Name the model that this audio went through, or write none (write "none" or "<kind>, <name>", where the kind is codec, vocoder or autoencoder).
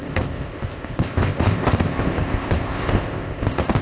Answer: codec, ZipCodec